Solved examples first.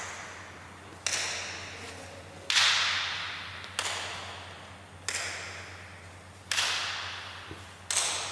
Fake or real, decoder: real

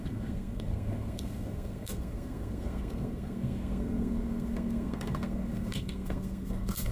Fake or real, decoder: fake, codec, SNAC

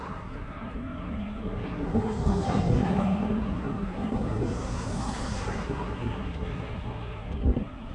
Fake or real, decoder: fake, codec, SNAC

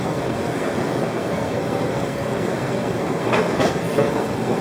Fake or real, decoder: fake, codec, SNAC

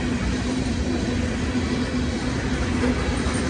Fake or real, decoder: real